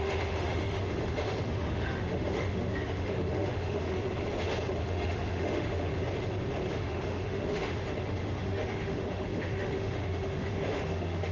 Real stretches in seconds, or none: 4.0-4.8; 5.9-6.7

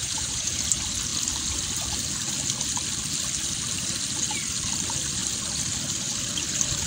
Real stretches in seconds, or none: 0.6-6.9

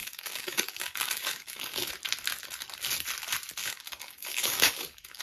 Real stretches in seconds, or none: 1.9-3.6